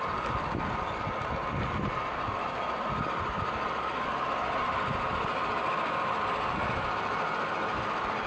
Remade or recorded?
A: recorded